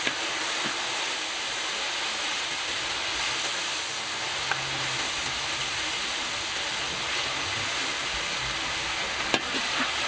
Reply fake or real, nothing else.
real